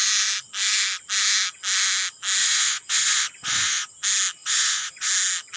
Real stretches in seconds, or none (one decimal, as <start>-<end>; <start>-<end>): 0.0-2.4; 3.9-4.4; 5.1-5.6